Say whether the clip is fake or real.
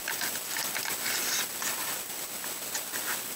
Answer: real